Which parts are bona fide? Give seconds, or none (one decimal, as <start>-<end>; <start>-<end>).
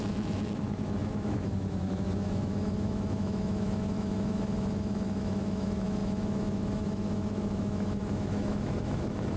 none